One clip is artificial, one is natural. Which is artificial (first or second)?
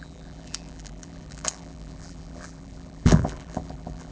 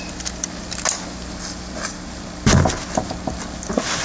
first